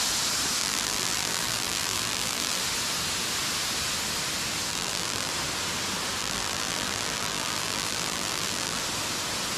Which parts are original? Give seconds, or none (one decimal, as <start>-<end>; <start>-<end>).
0.0-0.6; 2.6-4.7; 5.3-6.2; 8.8-9.6